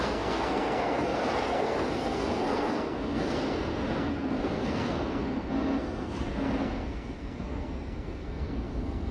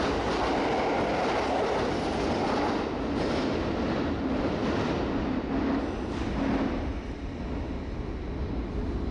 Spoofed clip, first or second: first